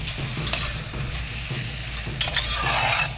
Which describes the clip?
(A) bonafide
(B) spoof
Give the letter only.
A